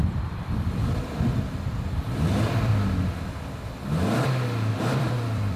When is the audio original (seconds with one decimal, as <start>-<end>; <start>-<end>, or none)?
2.7-4.7